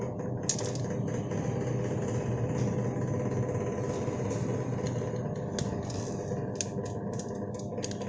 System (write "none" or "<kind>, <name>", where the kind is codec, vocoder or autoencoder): none